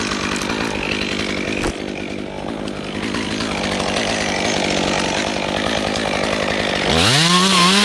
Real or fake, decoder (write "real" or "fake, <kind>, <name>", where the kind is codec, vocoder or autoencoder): real